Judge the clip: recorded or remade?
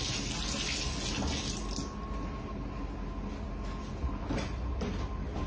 recorded